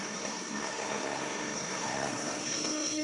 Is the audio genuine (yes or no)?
no